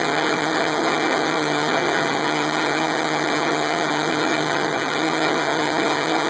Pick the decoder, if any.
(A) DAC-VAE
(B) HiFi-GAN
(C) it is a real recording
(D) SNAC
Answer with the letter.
B